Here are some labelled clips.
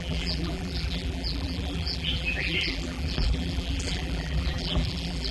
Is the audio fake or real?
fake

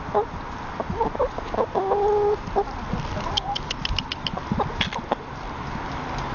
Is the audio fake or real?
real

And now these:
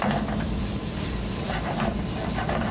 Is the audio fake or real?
fake